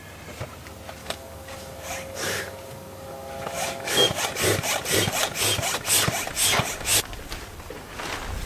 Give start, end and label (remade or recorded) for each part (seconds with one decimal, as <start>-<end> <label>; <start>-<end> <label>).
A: 0.0-1.0 recorded; 1.0-4.2 remade; 4.2-8.5 recorded